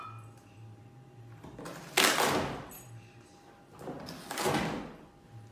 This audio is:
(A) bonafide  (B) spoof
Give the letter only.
A